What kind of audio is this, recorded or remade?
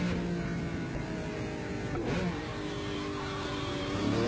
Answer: recorded